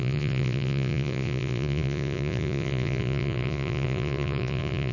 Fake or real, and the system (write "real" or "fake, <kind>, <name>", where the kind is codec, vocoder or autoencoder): fake, vocoder, Vocos